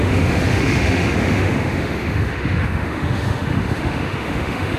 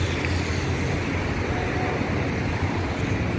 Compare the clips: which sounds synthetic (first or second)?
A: first